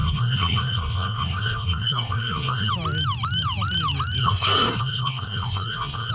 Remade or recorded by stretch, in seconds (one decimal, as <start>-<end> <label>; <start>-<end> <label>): 0.0-2.7 remade; 2.7-4.2 recorded; 4.2-6.1 remade